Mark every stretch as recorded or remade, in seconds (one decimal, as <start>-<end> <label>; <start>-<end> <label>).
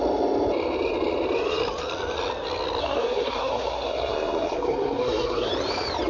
0.0-2.8 recorded; 2.8-5.5 remade; 5.5-6.1 recorded